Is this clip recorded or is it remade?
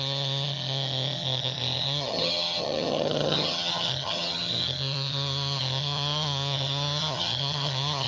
remade